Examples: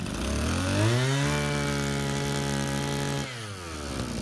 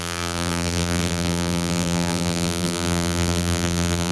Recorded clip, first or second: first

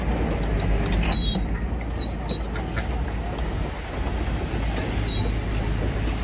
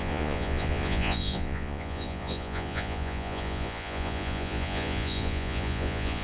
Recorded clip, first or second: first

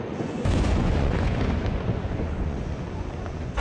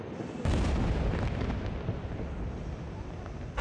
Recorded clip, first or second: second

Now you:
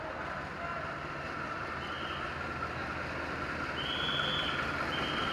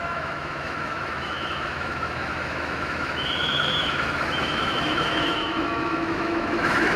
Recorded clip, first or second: first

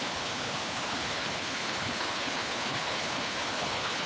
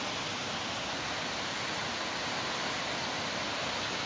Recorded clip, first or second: second